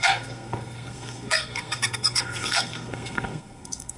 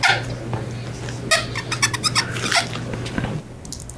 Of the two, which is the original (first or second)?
second